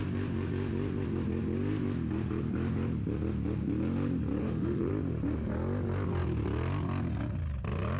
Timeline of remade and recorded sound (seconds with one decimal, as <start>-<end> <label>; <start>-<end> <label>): 0.0-4.4 recorded; 4.4-4.9 remade; 4.9-8.0 recorded